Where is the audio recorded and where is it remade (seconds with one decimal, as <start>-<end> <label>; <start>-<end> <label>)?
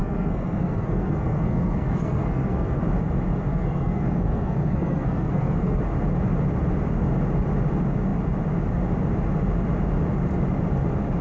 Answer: 0.0-2.8 remade; 2.8-3.5 recorded; 3.5-5.8 remade; 5.8-11.2 recorded